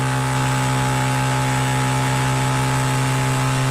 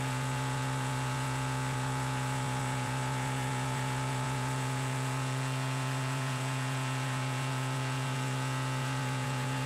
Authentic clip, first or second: first